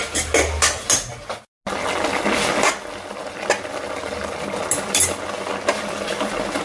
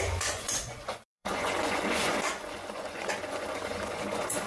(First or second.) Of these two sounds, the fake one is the second